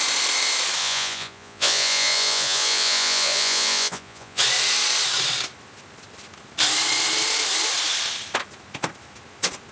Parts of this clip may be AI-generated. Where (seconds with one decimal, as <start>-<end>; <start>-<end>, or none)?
0.8-4.4